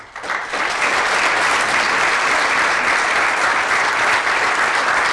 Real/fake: real